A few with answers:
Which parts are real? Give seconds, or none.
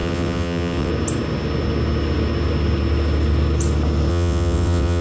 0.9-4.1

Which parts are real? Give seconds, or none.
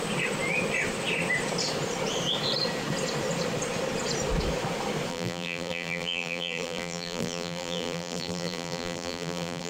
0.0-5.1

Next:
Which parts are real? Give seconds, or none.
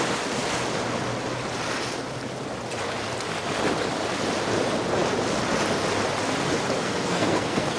0.0-6.8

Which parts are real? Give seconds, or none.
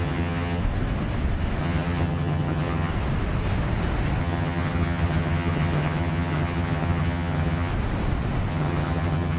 0.6-1.6; 2.9-4.2; 7.7-8.5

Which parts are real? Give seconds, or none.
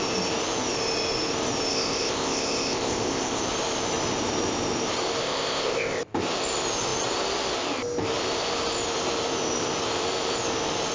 0.0-1.7; 3.4-5.2; 6.0-10.9